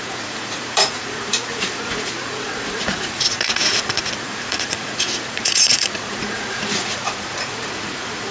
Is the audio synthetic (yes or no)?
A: yes